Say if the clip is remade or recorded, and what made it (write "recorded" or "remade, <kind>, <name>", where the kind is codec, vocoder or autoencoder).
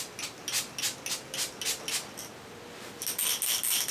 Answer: recorded